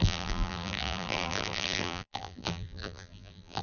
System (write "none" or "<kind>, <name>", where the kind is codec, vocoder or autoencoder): vocoder, BigVGAN v2